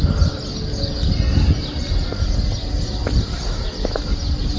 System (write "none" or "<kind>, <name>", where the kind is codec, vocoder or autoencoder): none